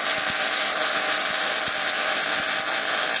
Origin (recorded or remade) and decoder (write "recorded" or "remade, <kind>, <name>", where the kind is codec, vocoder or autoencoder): recorded